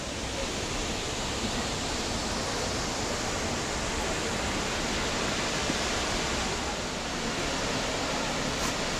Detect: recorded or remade recorded